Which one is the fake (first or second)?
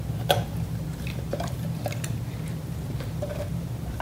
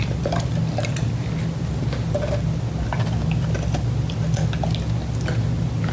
first